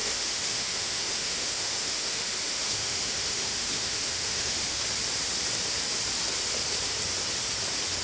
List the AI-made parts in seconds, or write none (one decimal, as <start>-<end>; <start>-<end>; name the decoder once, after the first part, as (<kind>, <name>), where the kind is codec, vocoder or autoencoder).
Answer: 0.0-4.8 (autoencoder, DAC-VAE)